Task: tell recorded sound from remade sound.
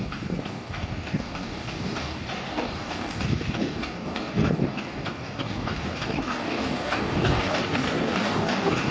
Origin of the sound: remade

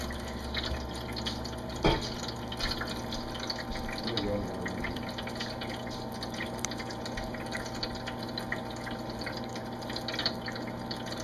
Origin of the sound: recorded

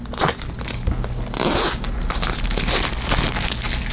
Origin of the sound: recorded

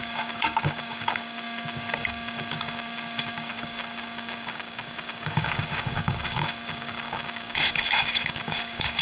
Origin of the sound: remade